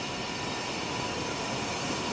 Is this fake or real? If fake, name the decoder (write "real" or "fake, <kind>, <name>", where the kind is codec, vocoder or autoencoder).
real